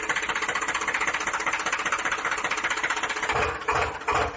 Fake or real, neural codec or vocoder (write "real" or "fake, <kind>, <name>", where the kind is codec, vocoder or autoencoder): real